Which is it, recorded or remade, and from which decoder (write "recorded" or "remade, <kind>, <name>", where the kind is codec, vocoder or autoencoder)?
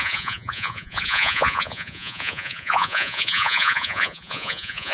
remade, vocoder, Vocos